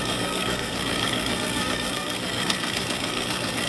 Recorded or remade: remade